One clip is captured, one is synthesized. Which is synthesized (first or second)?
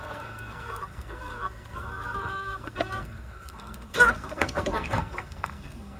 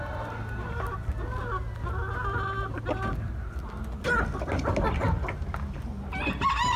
first